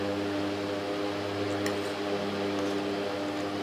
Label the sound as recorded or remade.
recorded